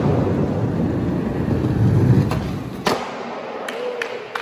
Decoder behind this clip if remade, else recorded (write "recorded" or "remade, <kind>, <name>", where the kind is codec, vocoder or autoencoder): recorded